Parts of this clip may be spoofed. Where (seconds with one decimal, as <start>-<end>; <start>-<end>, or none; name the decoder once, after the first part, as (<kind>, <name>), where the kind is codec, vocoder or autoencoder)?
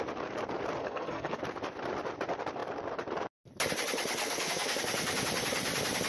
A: 0.8-1.4 (codec, SNAC); 4.2-4.8